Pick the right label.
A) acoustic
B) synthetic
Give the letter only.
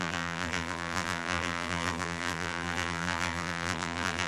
B